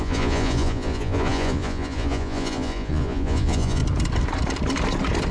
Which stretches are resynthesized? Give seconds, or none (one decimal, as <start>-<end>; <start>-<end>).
0.0-3.8